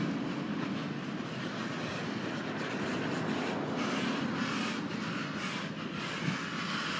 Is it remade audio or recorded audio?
recorded